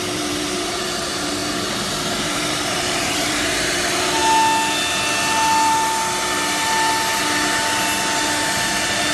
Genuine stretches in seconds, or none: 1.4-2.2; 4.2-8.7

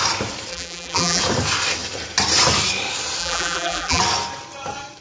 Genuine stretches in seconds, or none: 0.0-0.5; 1.2-3.2; 4.0-5.0

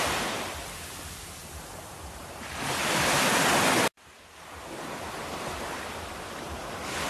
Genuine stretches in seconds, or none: 1.4-5.7

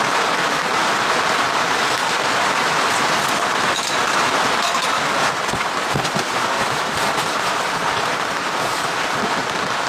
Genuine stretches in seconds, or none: 0.0-9.9

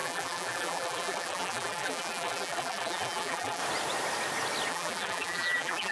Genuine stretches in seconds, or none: 3.6-4.7

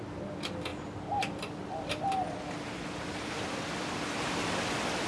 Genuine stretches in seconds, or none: 0.0-0.7; 3.8-5.1